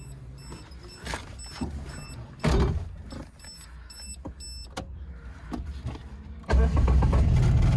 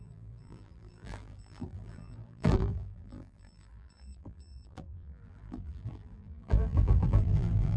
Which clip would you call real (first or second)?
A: first